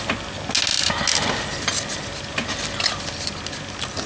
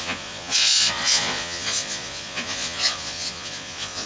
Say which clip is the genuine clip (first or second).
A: first